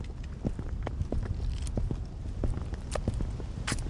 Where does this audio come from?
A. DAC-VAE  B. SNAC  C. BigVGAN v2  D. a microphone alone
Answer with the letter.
D